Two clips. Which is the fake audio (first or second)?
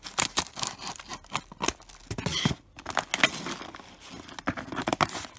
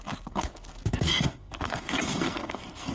second